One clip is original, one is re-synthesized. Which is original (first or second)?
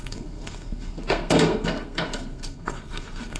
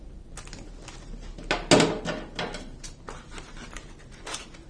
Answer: second